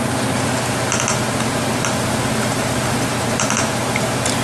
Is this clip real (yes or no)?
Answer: yes